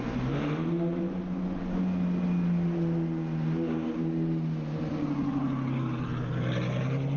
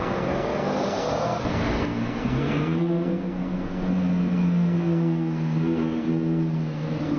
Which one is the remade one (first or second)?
second